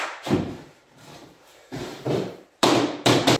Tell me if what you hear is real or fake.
fake